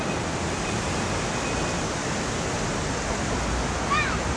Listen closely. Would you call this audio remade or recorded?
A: recorded